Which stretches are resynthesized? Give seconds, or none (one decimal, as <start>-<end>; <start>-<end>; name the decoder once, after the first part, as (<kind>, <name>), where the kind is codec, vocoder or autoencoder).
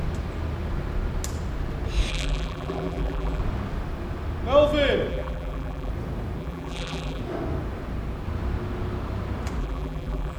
2.1-3.4 (vocoder, BigVGAN v2); 5.1-5.9; 6.4-7.2; 9.6-10.4